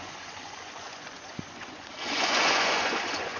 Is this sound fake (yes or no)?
yes